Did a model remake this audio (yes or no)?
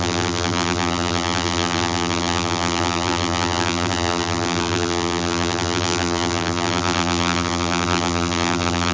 yes